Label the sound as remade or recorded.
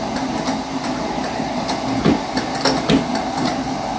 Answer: recorded